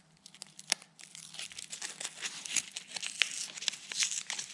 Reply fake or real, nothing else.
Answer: real